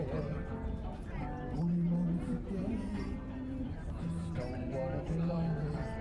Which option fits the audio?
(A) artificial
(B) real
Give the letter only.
A